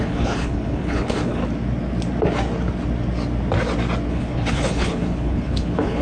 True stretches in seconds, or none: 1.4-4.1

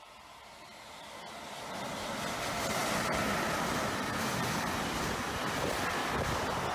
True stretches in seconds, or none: 0.0-2.8; 5.4-6.0

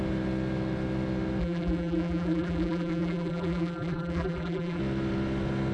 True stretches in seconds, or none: 0.0-1.4; 4.8-5.7

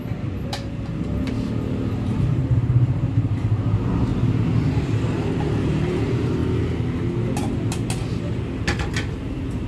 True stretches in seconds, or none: 4.1-5.6; 6.4-9.1

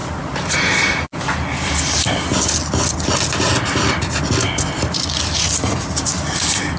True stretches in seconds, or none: 0.0-6.8